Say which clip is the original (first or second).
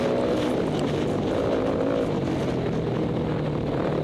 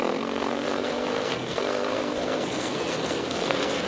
first